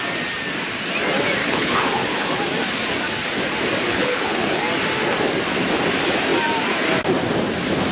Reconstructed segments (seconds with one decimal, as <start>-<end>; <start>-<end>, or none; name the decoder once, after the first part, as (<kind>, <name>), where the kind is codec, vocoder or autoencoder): 1.4-2.4 (codec, HILCodec); 3.9-4.6